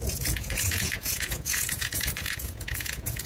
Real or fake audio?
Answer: fake